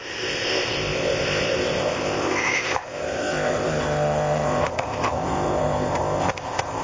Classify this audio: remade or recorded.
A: remade